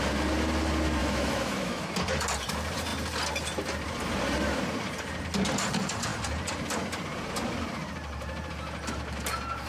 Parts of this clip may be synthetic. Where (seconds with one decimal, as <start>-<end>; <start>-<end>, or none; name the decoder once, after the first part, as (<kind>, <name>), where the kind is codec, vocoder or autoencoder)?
1.0-1.9 (autoencoder, DAC-VAE)

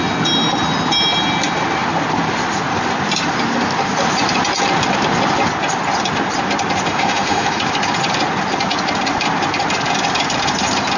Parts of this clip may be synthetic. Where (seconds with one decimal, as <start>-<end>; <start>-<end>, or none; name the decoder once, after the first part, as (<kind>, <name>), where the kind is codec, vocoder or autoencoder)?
6.9-7.6 (autoencoder, DAC-VAE)

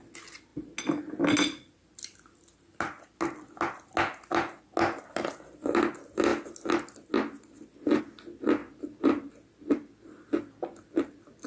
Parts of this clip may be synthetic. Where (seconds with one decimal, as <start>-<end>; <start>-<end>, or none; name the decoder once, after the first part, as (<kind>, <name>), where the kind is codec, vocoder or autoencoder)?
none

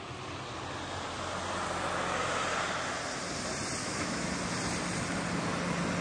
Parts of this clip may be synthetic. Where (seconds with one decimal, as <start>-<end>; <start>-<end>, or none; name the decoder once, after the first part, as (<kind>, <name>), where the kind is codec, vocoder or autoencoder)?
3.8-4.3 (autoencoder, DAC-VAE)

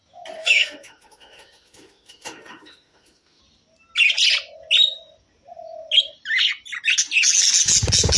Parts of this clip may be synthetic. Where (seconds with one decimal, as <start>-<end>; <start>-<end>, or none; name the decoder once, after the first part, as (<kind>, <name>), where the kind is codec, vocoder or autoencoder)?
0.4-3.4 (autoencoder, DAC-VAE)

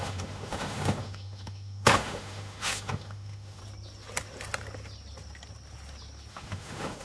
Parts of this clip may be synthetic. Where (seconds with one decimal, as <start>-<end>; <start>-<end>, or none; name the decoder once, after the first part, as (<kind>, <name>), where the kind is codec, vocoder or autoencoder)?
0.0-3.6 (autoencoder, DAC-VAE); 6.3-7.0